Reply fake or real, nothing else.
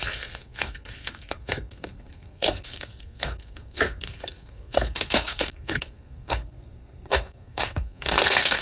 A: fake